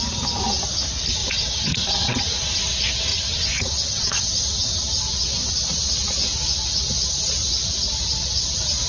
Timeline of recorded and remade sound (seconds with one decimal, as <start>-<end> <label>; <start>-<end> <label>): 0.0-1.2 recorded; 1.2-2.6 remade; 2.6-3.1 recorded; 3.1-5.0 remade; 5.0-8.9 recorded